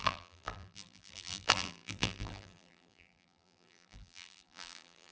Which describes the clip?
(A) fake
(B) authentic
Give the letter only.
A